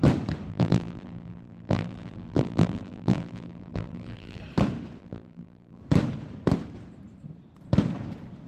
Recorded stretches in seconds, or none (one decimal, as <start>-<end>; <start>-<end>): 0.0-0.5; 4.4-5.0; 5.8-8.5

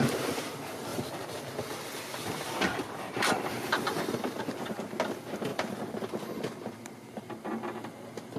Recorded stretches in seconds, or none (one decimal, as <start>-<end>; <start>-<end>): 0.0-0.9; 4.4-5.5; 6.1-8.4

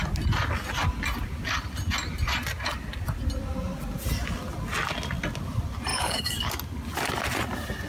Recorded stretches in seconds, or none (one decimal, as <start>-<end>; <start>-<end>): 0.0-5.9; 6.5-7.9